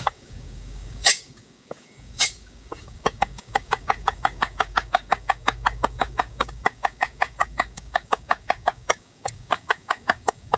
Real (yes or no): no